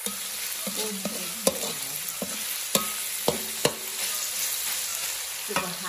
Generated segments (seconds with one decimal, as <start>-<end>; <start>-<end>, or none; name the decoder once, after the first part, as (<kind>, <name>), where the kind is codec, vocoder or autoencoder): none